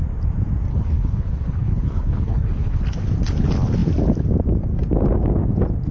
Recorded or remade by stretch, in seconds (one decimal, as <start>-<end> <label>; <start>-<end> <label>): 0.0-0.7 recorded; 0.7-2.8 remade; 2.8-5.9 recorded